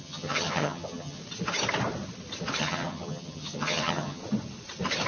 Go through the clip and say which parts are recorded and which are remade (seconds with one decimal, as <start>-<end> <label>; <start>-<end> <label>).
0.0-1.2 remade; 1.2-2.6 recorded; 2.6-4.2 remade; 4.2-5.1 recorded